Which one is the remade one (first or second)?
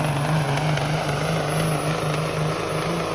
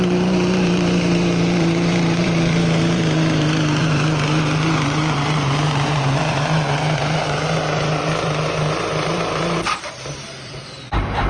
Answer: second